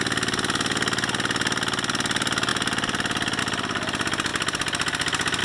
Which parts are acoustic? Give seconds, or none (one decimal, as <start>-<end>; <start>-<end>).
0.0-5.4